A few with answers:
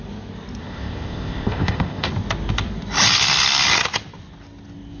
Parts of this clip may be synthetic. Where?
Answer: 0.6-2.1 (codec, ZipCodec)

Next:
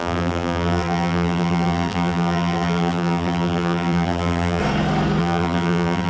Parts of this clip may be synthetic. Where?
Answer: 0.0-4.6 (vocoder, BigVGAN v2); 5.2-6.1

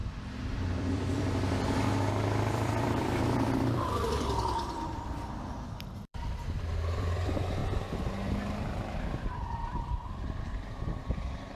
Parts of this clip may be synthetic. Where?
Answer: 0.0-7.6 (vocoder, BigVGAN v2); 9.2-11.6

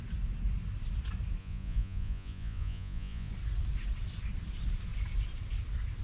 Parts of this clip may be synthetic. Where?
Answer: 1.4-3.3 (vocoder, Vocos)

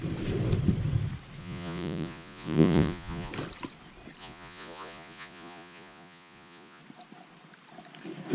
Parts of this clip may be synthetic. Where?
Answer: 1.4-3.3 (vocoder, Vocos); 4.2-6.8

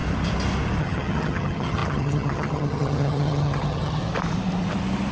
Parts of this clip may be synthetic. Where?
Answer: 0.8-4.0 (vocoder, HiFi-GAN)